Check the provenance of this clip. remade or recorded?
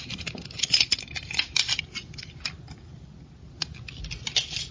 recorded